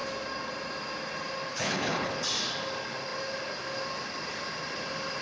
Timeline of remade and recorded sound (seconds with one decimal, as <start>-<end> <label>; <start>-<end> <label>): 0.0-1.5 recorded; 1.5-2.1 remade; 2.1-5.2 recorded